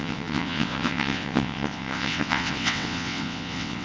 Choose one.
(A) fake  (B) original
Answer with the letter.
A